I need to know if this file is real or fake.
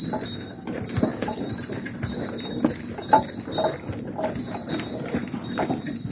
fake